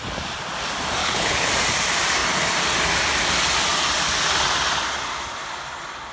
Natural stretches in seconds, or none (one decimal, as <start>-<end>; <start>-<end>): 0.0-1.0; 1.5-6.1